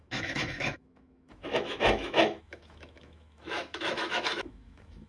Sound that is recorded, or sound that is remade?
remade